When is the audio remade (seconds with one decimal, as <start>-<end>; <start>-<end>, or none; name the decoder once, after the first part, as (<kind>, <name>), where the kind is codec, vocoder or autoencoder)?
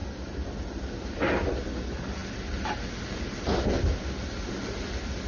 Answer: none